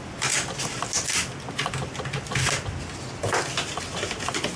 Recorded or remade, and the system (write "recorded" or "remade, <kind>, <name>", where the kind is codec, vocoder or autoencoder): recorded